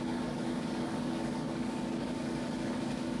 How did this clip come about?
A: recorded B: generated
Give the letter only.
B